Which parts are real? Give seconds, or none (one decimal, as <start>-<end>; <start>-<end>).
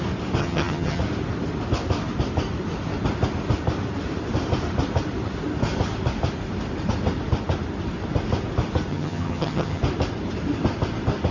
0.0-0.4; 1.0-8.9; 9.8-11.3